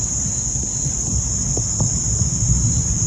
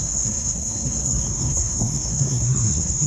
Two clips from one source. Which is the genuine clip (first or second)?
first